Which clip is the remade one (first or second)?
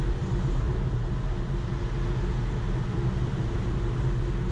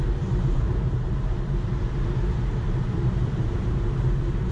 second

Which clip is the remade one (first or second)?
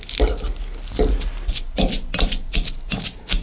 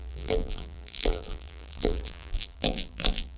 second